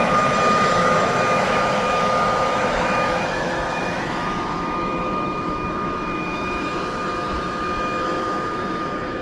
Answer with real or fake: fake